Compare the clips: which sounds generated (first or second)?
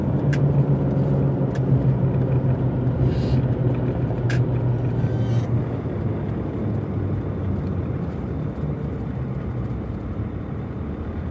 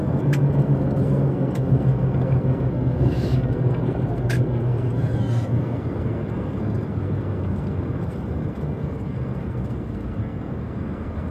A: second